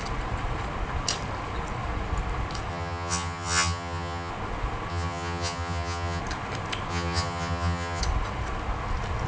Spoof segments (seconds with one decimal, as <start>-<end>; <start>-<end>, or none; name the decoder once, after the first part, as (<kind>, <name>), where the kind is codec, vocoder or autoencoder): 2.7-4.3 (vocoder, HiFi-GAN); 4.9-6.2; 6.9-8.0